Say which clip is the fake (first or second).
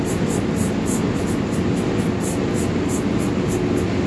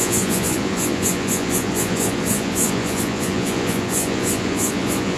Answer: second